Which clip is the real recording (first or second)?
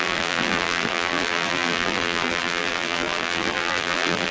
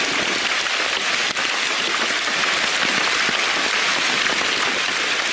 second